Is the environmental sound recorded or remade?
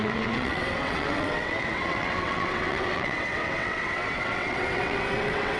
remade